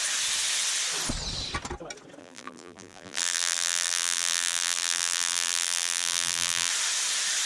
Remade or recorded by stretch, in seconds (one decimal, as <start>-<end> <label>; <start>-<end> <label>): 0.0-2.2 recorded; 2.2-6.7 remade; 6.7-7.5 recorded